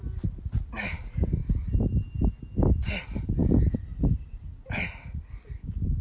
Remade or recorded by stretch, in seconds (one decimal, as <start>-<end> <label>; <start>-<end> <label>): 0.0-6.0 recorded